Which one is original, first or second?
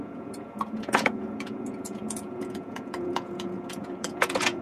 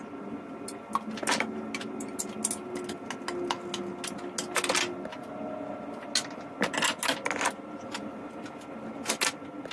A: second